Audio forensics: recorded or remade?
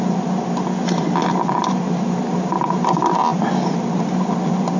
remade